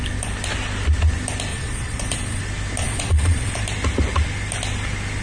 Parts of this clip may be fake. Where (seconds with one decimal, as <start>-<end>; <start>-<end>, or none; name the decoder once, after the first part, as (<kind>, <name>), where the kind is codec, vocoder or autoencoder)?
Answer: 1.5-2.4 (vocoder, Vocos); 2.8-3.6